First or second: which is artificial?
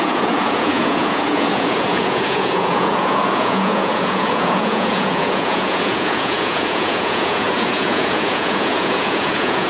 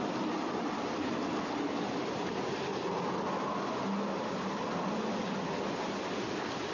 first